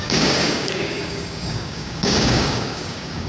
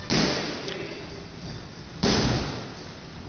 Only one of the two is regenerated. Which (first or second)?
first